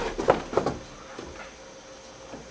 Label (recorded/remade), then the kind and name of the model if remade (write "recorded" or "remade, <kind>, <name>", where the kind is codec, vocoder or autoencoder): recorded